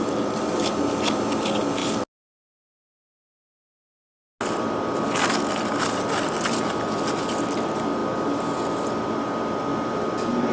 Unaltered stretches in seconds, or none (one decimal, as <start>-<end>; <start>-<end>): 0.0-10.5